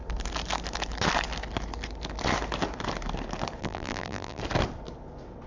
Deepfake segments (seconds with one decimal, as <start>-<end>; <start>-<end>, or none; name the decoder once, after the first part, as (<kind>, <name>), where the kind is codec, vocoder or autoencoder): 3.6-4.4 (vocoder, BigVGAN v2)